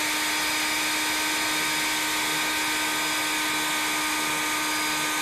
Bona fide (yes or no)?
yes